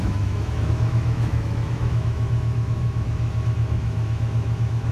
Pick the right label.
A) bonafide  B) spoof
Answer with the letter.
B